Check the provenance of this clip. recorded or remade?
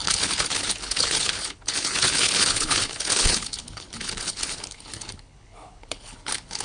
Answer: remade